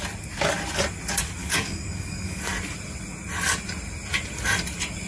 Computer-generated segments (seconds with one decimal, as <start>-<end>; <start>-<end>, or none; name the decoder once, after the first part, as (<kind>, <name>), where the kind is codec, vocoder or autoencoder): 1.4-2.4 (codec, DAC)